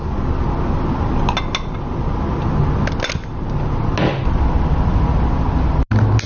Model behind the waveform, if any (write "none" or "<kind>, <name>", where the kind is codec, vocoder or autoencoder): none